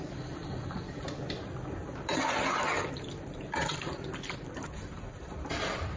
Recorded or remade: remade